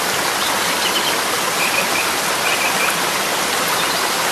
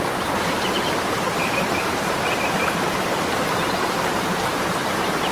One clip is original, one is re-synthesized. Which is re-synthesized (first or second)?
second